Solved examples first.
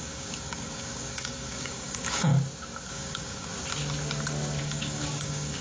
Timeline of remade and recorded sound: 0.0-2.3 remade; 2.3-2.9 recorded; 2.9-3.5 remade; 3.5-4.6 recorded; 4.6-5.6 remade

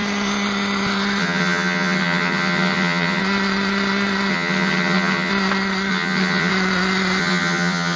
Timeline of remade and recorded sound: 0.0-1.2 recorded; 1.2-3.2 remade; 3.2-4.3 recorded; 4.3-5.3 remade; 5.3-5.9 recorded; 5.9-6.5 remade; 6.5-7.2 recorded; 7.2-8.0 remade

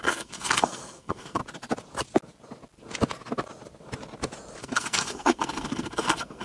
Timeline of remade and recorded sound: 0.0-1.4 remade; 1.4-4.6 recorded; 4.6-6.4 remade

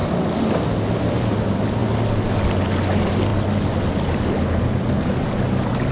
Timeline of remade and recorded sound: 0.0-5.9 recorded

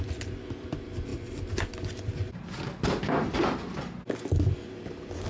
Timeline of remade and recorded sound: 0.0-5.3 recorded

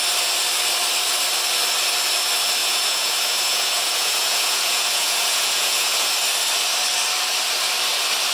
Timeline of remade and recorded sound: 0.0-2.6 recorded; 2.6-6.1 remade; 6.1-8.3 recorded